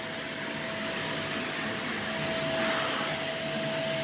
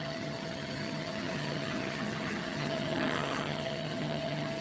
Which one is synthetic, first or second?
second